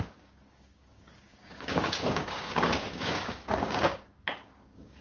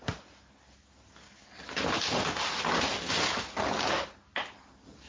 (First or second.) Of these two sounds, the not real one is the first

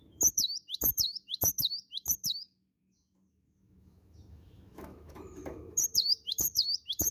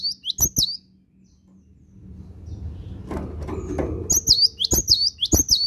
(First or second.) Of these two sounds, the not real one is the first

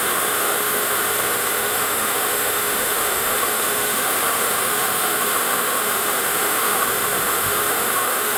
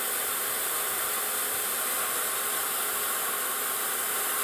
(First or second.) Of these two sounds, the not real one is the first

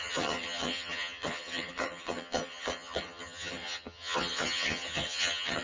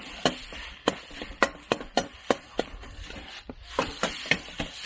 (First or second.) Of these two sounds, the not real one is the first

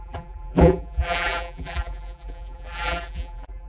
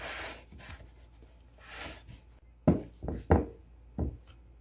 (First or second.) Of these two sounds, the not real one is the first